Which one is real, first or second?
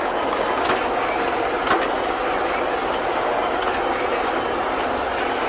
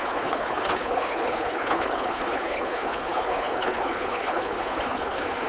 first